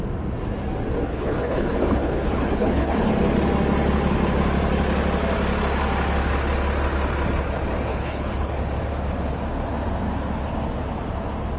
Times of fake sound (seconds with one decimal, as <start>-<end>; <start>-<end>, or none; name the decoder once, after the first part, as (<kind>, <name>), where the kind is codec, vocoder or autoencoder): 1.1-3.1 (codec, HILCodec); 7.9-8.5